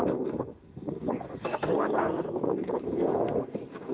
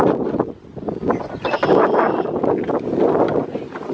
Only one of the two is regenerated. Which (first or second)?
first